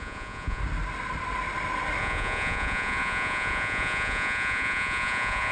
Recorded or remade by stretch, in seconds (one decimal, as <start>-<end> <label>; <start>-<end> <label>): 0.0-0.6 remade; 0.6-2.0 recorded; 2.0-5.5 remade

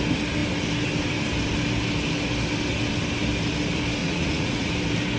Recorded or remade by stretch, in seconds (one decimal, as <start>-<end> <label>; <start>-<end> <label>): 0.0-4.0 recorded; 4.0-4.7 remade; 4.7-5.2 recorded

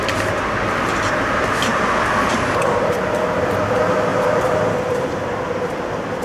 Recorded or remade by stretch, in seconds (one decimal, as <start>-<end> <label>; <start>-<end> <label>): 0.0-4.1 recorded; 4.1-5.8 remade; 5.8-6.2 recorded

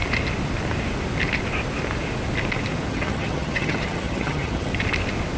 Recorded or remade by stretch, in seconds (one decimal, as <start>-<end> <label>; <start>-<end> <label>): 0.0-2.9 recorded; 2.9-4.7 remade; 4.7-5.4 recorded

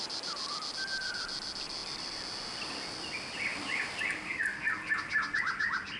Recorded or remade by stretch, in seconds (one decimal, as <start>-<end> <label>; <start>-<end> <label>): 0.0-4.5 remade; 4.5-5.4 recorded; 5.4-6.0 remade

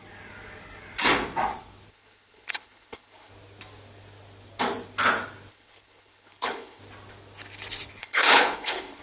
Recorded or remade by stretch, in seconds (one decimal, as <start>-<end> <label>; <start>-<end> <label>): 0.0-1.9 recorded; 1.9-3.3 remade; 3.3-5.5 recorded; 5.5-6.8 remade; 6.8-8.0 recorded; 8.0-9.0 remade

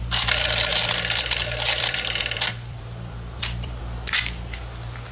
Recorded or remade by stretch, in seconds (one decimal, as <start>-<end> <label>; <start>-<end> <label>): 0.0-0.7 recorded; 0.7-3.8 remade; 3.8-5.1 recorded